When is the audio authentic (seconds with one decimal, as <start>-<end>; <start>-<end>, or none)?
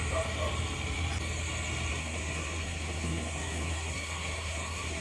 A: 0.0-1.9